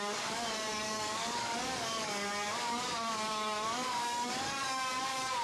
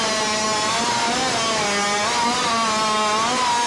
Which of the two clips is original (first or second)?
second